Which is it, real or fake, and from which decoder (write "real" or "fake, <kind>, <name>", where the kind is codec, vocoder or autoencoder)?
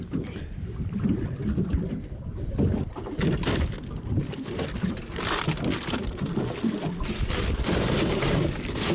fake, vocoder, BigVGAN v2